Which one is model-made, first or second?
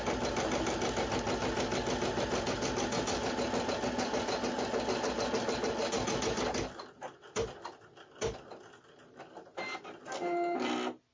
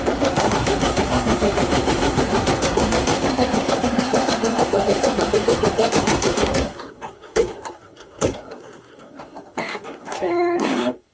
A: second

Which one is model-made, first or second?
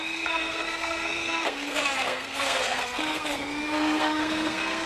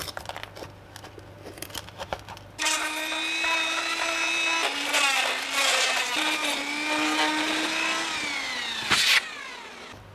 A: first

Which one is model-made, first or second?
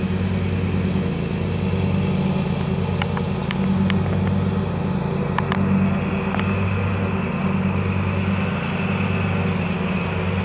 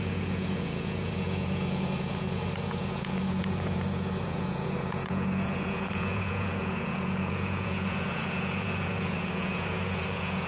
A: second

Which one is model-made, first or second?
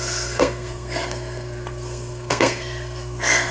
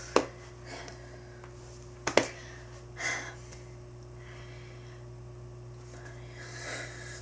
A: first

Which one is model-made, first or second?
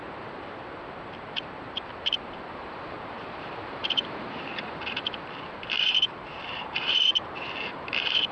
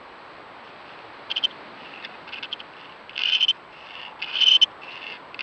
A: first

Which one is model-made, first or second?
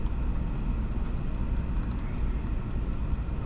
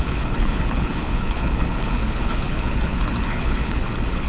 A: second